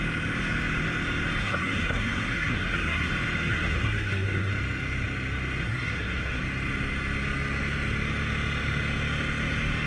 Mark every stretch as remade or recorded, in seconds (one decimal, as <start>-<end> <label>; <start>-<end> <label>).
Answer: 0.0-1.4 recorded; 1.4-3.1 remade; 3.1-3.5 recorded; 3.5-4.5 remade; 4.5-5.6 recorded; 5.6-6.4 remade; 6.4-9.9 recorded